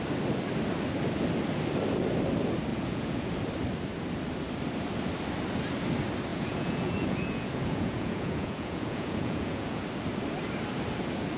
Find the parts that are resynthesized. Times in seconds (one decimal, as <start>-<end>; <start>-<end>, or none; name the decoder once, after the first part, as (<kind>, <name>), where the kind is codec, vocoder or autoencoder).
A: 2.7-3.3 (vocoder, Vocos); 6.3-9.8